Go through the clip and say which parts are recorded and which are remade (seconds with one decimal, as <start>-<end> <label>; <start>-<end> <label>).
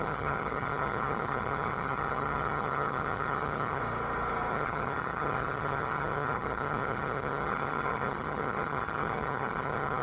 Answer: 0.0-3.8 remade; 3.8-4.5 recorded; 4.5-10.0 remade